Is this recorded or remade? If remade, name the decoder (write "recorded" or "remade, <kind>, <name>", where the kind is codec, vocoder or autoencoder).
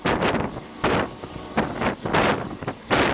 recorded